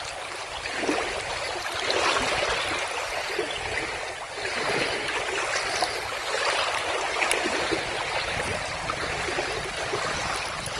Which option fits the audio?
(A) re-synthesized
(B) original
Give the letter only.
B